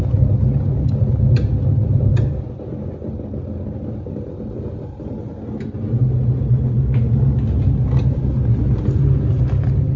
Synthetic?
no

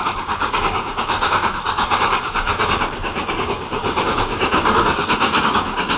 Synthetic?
yes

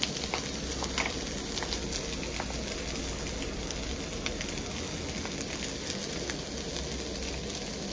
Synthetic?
no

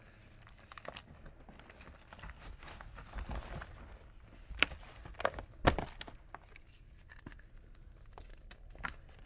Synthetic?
no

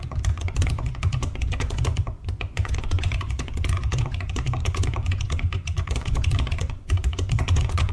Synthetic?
yes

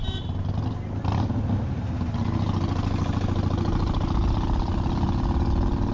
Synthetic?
no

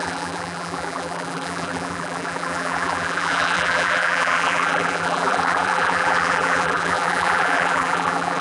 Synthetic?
yes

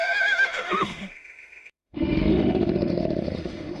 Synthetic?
yes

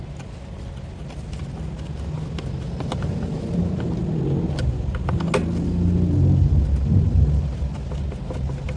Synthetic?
no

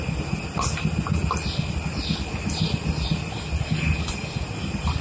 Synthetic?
no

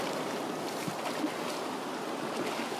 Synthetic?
no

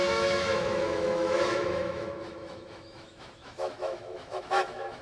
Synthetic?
yes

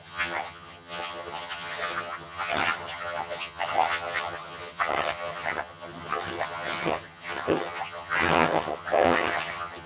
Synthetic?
yes